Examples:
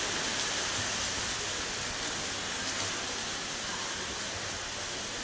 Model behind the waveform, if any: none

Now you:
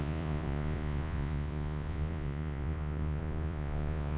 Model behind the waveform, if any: vocoder, Vocos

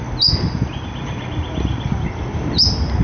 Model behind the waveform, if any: none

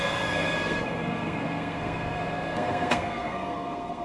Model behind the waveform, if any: codec, SNAC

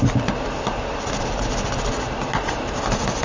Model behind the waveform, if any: none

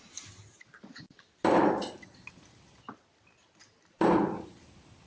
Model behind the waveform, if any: none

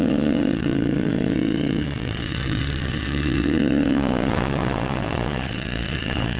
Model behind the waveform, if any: vocoder, WaveNeXt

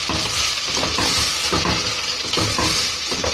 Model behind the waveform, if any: none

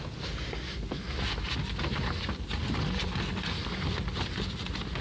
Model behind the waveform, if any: none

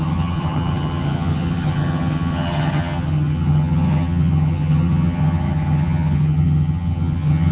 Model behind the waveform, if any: vocoder, HiFi-GAN